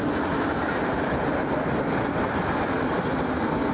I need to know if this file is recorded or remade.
recorded